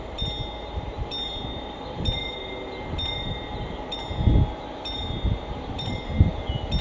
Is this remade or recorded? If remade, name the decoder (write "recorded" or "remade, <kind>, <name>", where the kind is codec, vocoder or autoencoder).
recorded